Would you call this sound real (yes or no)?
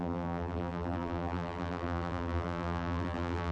no